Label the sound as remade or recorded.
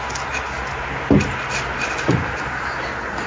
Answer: recorded